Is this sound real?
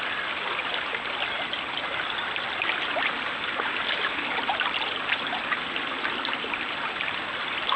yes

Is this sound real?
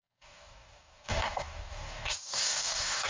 no